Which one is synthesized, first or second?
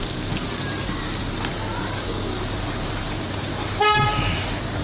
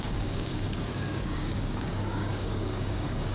second